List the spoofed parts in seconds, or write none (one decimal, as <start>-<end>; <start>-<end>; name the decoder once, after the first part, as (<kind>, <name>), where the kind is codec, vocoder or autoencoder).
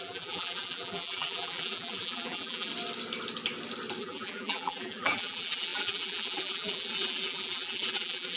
0.0-2.7 (vocoder, BigVGAN v2); 4.0-8.4